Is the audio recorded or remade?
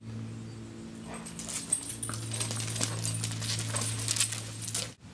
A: recorded